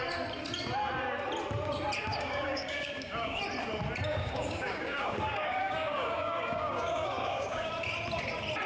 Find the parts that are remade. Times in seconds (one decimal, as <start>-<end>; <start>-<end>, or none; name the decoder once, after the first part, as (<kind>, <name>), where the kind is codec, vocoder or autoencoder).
2.1-3.4 (codec, DAC); 4.1-7.7